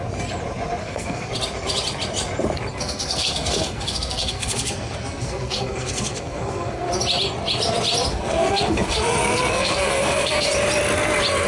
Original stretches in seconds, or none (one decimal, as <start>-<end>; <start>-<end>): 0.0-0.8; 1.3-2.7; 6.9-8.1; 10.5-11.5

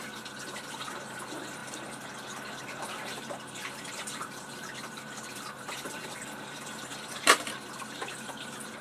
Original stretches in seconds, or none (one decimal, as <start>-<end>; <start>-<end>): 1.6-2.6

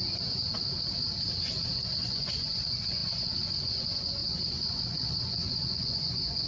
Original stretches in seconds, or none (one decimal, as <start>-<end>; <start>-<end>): 0.4-1.6

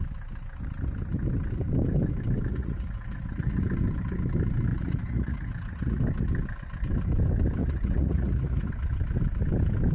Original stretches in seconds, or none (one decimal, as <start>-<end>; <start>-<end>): 0.0-2.5; 3.6-4.7; 6.0-7.6; 8.7-9.9